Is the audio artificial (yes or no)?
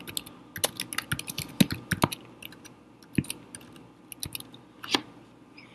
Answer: no